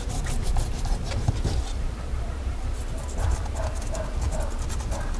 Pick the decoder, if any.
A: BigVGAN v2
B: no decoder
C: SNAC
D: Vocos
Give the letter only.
B